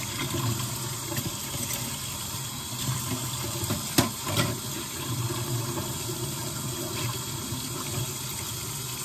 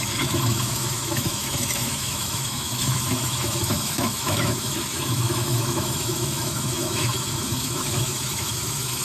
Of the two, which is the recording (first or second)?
first